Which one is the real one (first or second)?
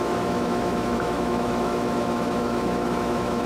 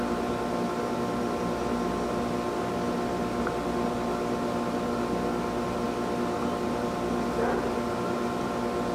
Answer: second